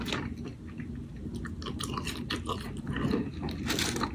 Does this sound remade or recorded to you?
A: recorded